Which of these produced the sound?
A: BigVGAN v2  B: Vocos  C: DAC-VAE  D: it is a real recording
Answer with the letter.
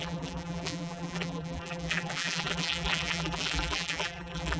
A